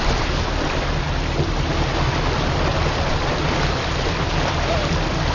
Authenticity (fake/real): real